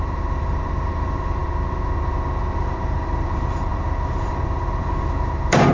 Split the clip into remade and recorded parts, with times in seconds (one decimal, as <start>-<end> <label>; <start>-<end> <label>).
0.0-1.4 remade; 1.4-2.6 recorded; 2.6-5.7 remade